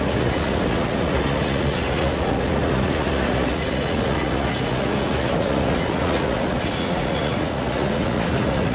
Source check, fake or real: fake